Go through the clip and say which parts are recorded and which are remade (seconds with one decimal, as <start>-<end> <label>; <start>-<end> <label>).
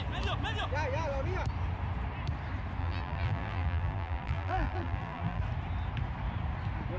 0.0-2.8 recorded; 2.8-5.4 remade; 5.4-7.0 recorded